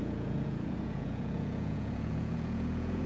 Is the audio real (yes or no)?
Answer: no